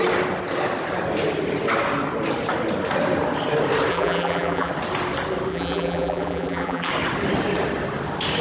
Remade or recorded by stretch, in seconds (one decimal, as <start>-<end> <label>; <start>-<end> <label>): 0.0-3.9 recorded; 3.9-4.7 remade; 4.7-5.5 recorded; 5.5-6.9 remade; 6.9-8.4 recorded